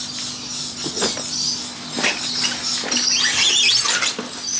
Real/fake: real